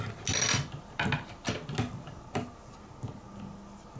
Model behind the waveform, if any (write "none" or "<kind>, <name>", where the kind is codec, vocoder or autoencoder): none